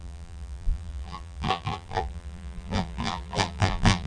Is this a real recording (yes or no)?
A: no